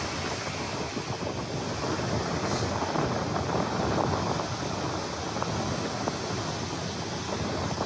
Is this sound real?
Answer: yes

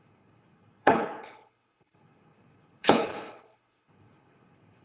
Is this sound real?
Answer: no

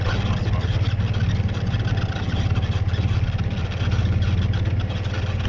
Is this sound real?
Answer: yes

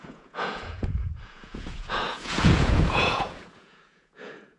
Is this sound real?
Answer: no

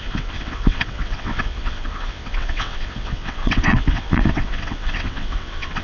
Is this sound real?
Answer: no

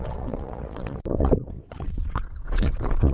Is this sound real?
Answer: no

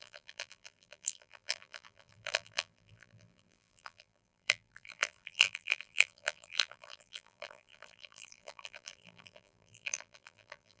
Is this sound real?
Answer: no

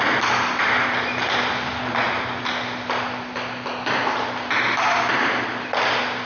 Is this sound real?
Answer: yes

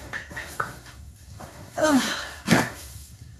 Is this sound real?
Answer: no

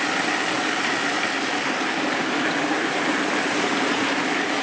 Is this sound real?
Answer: yes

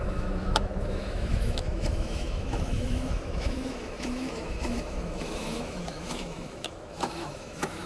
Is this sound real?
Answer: no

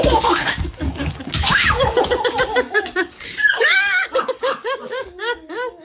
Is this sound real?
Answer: no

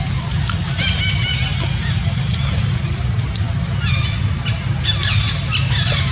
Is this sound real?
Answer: yes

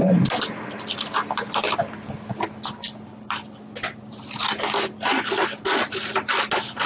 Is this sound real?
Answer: yes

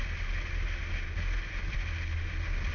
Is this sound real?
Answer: yes